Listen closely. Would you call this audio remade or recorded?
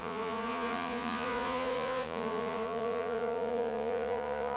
remade